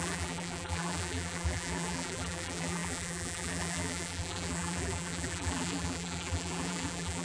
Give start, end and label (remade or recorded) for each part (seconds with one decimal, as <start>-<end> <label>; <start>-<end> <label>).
0.0-7.2 remade